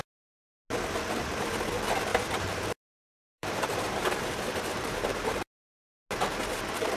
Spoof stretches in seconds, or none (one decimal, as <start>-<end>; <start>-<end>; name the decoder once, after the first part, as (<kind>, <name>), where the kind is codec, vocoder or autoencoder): 2.1-5.6 (vocoder, BigVGAN v2)